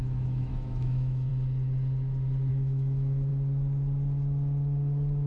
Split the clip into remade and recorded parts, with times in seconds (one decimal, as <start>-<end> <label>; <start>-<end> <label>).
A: 0.0-1.3 remade; 1.3-2.5 recorded; 2.5-3.3 remade; 3.3-5.3 recorded